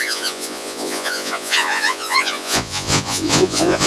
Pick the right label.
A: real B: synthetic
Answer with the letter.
B